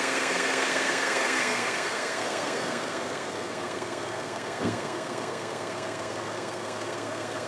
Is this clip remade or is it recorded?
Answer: remade